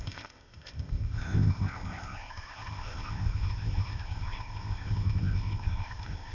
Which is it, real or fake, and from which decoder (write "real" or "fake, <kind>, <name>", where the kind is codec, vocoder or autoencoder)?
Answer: fake, codec, ZipCodec